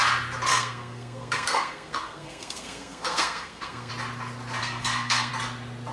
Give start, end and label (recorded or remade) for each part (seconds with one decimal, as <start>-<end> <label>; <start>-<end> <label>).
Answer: 0.0-0.5 recorded; 0.5-3.9 remade; 3.9-4.6 recorded; 4.6-5.3 remade; 5.3-5.9 recorded

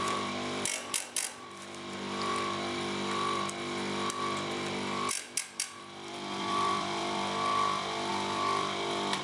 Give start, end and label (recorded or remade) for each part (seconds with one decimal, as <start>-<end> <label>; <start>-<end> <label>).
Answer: 0.0-2.3 remade; 2.3-5.1 recorded; 5.1-9.2 remade

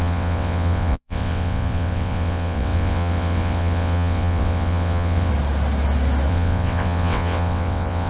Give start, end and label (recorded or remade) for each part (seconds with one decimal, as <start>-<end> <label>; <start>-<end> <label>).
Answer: 0.0-5.3 remade; 5.3-6.3 recorded; 6.3-8.1 remade

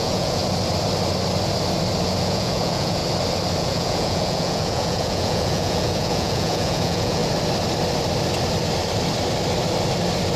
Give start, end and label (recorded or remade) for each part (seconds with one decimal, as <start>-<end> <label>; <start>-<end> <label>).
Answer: 0.0-0.4 remade; 0.4-2.2 recorded; 2.2-3.0 remade; 3.0-3.6 recorded; 3.6-7.2 remade; 7.2-10.4 recorded

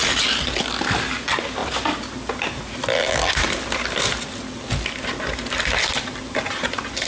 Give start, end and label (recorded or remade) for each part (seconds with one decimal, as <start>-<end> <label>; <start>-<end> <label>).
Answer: 0.0-7.1 recorded

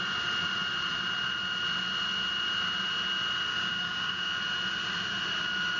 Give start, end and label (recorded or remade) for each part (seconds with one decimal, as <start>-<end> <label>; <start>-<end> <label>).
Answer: 0.0-3.5 recorded; 3.5-4.4 remade; 4.4-5.8 recorded

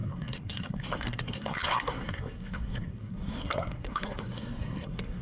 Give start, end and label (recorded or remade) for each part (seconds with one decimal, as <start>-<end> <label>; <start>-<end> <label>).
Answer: 0.0-5.2 remade

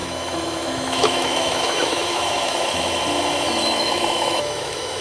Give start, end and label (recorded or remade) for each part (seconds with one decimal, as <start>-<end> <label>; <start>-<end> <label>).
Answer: 0.0-3.0 remade; 3.0-3.6 recorded; 3.6-5.0 remade